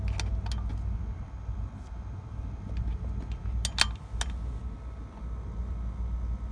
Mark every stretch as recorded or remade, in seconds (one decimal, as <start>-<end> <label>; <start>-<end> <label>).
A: 0.0-6.5 recorded